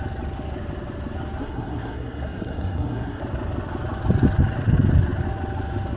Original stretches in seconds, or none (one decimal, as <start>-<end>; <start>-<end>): 0.0-1.4; 3.2-6.0